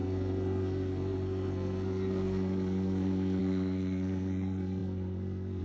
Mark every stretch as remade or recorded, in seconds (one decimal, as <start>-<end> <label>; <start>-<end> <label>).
0.0-5.6 remade